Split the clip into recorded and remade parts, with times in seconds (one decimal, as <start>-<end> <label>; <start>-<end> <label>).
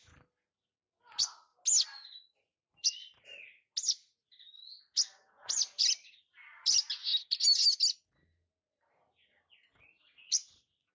0.0-10.9 recorded